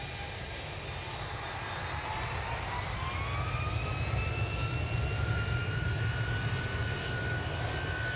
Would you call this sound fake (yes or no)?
no